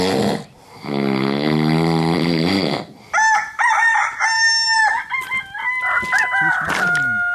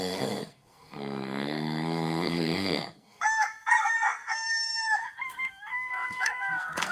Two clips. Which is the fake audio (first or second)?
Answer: second